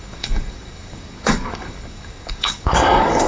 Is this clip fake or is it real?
fake